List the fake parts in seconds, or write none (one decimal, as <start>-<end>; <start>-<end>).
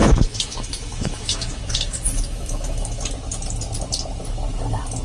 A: 0.0-3.0